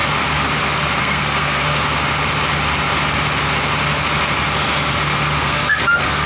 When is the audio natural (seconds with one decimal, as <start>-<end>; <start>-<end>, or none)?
0.0-1.0; 1.6-5.4